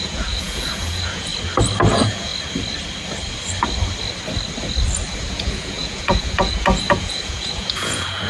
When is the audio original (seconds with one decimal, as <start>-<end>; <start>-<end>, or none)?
1.3-1.9; 2.3-5.3